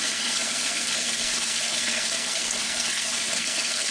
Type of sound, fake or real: fake